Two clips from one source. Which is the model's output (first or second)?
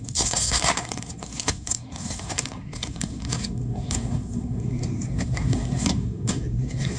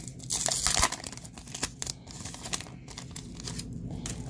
first